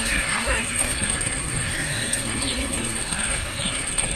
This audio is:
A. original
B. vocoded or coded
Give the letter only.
B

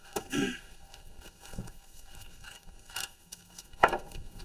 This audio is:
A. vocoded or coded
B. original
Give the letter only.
A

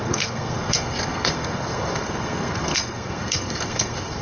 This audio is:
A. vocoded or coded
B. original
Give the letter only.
A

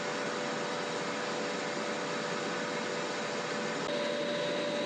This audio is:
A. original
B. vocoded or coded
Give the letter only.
A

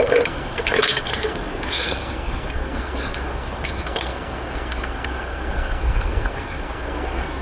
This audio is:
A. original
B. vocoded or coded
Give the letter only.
B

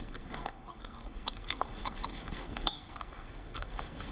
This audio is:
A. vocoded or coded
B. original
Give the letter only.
A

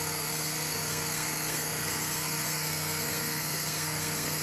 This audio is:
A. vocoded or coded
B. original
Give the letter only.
A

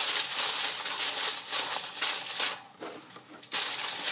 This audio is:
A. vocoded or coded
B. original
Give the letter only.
B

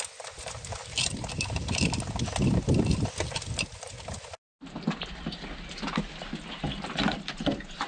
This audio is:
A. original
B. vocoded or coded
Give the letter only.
A